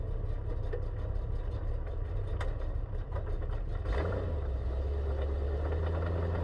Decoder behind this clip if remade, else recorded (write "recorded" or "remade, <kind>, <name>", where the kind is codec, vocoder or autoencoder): recorded